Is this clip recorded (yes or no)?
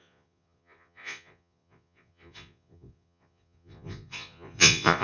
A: no